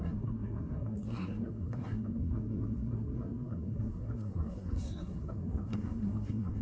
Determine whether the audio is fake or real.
fake